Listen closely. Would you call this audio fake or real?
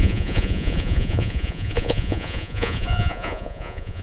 fake